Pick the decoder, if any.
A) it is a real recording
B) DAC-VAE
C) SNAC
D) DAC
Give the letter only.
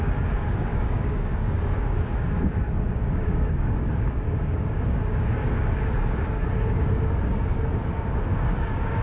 D